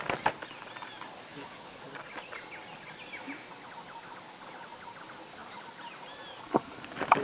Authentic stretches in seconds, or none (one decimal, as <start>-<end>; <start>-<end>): 0.0-1.3; 1.8-7.2